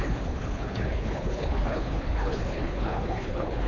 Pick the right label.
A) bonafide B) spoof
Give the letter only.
B